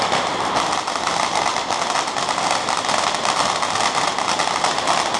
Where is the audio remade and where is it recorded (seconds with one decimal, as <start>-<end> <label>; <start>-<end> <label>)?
0.0-5.2 recorded